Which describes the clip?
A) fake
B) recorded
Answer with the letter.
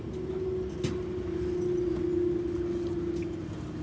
B